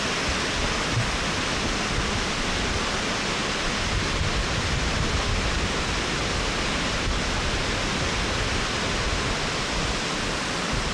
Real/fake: real